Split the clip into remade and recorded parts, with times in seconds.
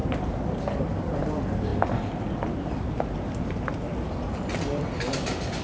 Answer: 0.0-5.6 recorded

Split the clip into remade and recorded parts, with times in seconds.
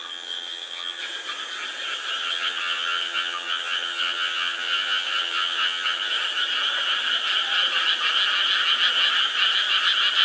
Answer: 0.0-1.0 remade; 1.0-2.2 recorded; 2.2-6.1 remade; 6.1-10.2 recorded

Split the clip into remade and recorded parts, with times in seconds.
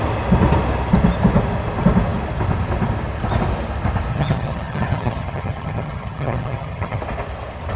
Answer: 0.0-4.1 recorded; 4.1-7.0 remade; 7.0-7.8 recorded